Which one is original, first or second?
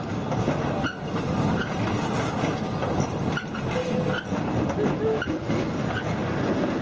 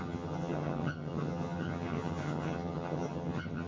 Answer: first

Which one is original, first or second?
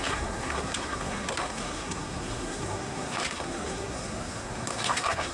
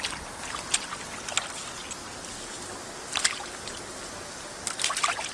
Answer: second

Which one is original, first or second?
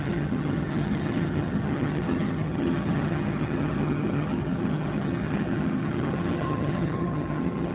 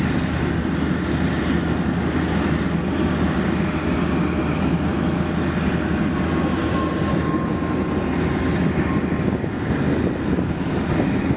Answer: second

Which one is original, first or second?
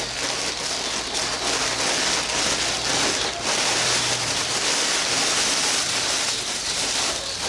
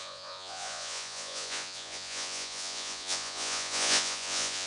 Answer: first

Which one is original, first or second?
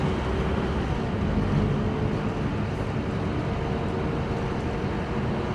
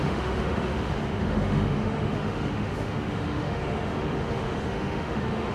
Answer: first